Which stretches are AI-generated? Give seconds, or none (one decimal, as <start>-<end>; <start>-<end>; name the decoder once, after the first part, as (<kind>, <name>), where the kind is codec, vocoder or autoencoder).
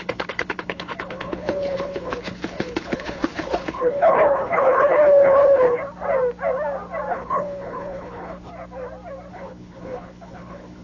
0.0-5.8 (codec, HILCodec); 7.1-8.5; 9.3-10.8